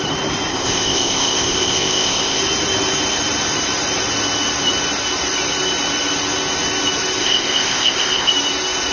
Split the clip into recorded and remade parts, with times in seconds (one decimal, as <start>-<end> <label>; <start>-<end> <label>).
0.0-0.5 recorded; 0.5-2.4 remade; 2.4-7.2 recorded; 7.2-8.3 remade; 8.3-8.9 recorded